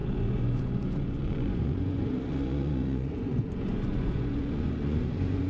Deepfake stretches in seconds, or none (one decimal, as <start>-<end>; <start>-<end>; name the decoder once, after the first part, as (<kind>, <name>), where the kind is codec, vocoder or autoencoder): 0.0-5.5 (vocoder, Vocos)